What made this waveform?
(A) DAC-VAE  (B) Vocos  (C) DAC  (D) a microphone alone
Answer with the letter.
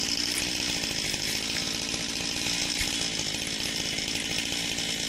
D